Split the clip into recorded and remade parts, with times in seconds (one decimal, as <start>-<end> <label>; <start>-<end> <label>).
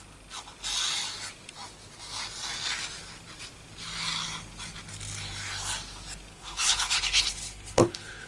0.0-6.3 recorded; 6.3-8.3 remade